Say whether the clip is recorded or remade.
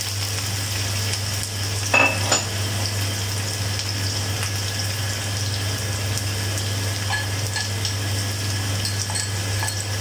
recorded